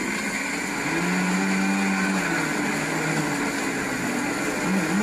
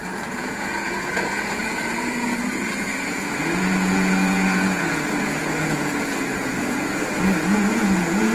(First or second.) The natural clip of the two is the first